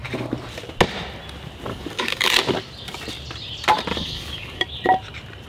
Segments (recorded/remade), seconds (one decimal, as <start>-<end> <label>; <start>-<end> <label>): 0.0-1.7 recorded; 1.7-2.3 remade; 2.3-3.9 recorded; 3.9-4.6 remade; 4.6-5.5 recorded